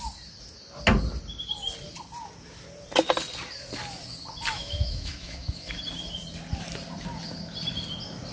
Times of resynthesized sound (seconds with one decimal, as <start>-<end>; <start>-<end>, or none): 4.5-5.8